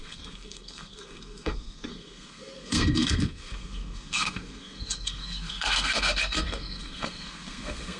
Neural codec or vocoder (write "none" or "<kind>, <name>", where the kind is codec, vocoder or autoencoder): codec, SNAC